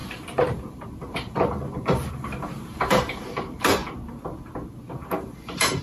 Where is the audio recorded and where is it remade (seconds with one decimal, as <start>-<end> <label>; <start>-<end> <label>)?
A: 0.0-3.8 remade; 3.8-4.9 recorded; 4.9-5.8 remade